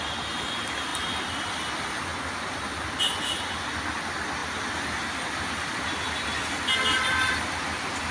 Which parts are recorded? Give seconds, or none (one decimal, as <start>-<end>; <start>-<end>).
0.0-8.1